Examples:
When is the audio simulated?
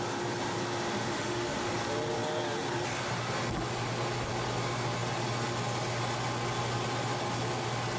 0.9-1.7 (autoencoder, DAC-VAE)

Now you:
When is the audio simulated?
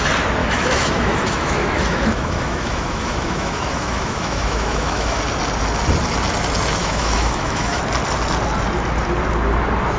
0.4-5.2 (autoencoder, DAC-VAE); 6.8-7.8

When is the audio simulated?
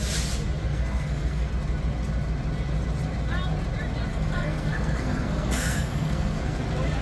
0.6-1.5 (codec, SNAC); 4.1-6.6